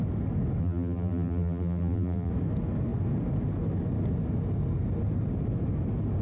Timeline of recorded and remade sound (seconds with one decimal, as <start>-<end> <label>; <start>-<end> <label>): 0.0-0.6 recorded; 0.6-2.3 remade; 2.3-6.2 recorded